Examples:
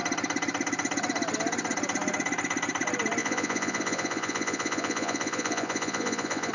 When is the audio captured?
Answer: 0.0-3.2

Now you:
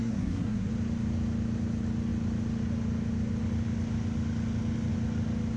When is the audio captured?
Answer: 0.7-5.6

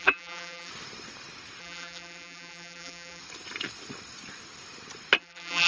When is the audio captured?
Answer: 0.7-1.6; 3.2-5.2